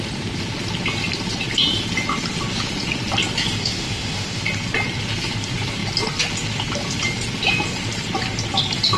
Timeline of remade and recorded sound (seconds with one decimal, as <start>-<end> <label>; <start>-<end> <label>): 0.0-3.5 recorded; 3.5-4.4 remade; 4.4-9.0 recorded